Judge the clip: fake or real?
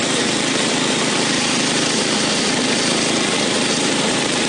fake